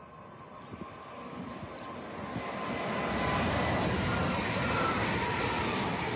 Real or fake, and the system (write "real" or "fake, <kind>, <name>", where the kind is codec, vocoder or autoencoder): real